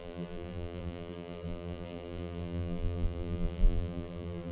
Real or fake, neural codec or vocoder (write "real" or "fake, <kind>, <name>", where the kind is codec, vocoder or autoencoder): fake, vocoder, BigVGAN v2